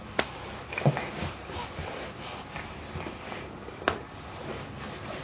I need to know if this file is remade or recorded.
recorded